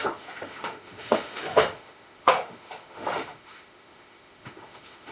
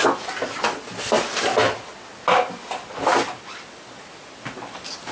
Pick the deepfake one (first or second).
first